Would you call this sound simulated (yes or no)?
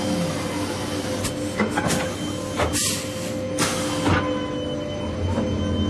no